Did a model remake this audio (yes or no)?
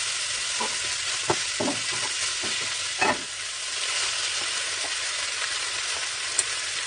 no